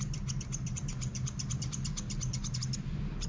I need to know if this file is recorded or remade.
recorded